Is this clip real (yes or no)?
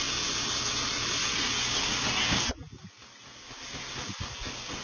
yes